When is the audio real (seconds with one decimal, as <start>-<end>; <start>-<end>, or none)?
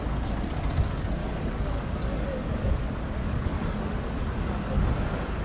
0.0-1.2; 2.7-3.2; 4.8-5.4